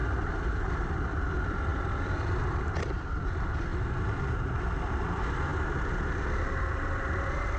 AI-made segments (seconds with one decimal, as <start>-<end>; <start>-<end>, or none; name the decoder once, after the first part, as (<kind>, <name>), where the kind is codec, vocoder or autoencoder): 1.0-3.7 (vocoder, BigVGAN v2); 4.9-5.5; 7.0-7.6